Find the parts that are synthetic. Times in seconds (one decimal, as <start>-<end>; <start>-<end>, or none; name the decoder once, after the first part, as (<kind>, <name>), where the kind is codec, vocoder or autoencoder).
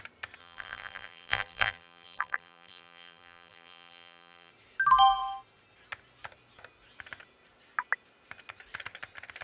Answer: 0.4-4.5 (vocoder, BigVGAN v2)